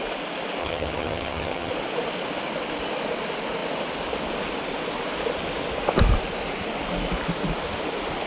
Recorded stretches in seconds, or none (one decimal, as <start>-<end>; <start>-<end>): 0.0-0.6; 1.7-8.3